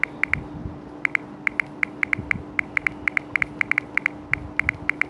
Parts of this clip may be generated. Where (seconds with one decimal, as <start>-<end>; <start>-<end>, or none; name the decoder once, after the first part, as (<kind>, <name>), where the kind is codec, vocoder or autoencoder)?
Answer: none